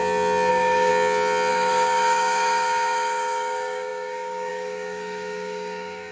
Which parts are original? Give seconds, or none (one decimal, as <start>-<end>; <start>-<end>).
0.0-0.5; 0.9-1.5